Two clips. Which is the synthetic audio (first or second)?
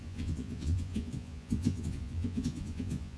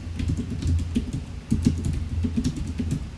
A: first